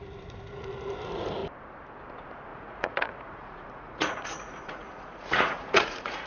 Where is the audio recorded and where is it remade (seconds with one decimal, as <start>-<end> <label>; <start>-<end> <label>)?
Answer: 0.0-2.5 recorded; 2.5-6.3 remade